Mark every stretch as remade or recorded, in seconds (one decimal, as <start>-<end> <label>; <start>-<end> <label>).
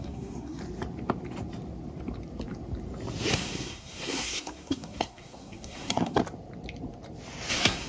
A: 0.0-0.6 remade; 0.6-3.3 recorded; 3.3-6.2 remade; 6.2-7.5 recorded; 7.5-7.9 remade